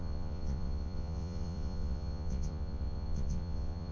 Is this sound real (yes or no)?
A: no